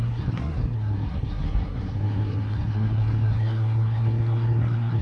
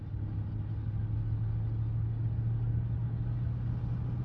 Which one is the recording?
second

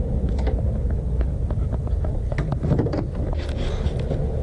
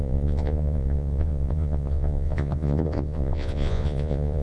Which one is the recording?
first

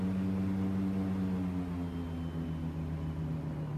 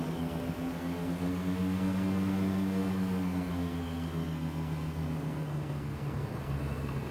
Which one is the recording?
first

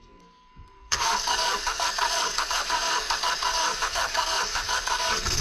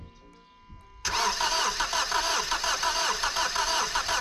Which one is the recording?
second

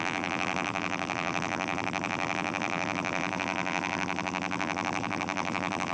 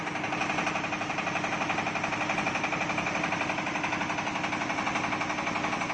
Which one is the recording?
second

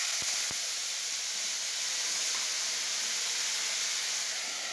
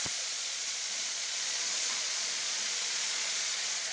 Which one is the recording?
first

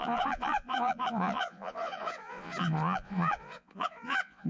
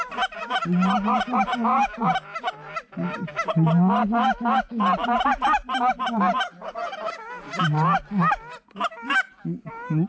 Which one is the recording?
second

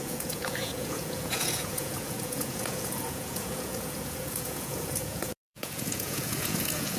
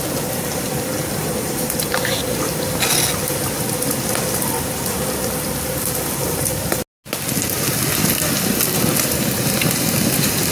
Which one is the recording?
second